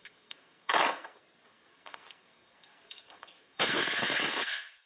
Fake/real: fake